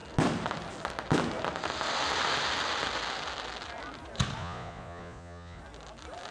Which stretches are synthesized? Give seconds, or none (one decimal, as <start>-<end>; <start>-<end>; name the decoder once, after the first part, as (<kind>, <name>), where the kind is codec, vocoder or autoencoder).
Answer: 4.4-5.6 (vocoder, Vocos)